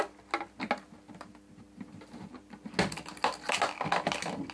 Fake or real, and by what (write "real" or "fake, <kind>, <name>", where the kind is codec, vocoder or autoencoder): real